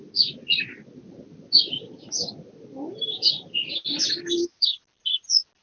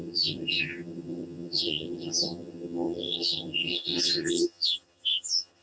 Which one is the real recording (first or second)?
first